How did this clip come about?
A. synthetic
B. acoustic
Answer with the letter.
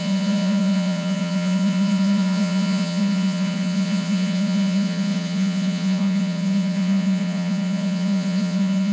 A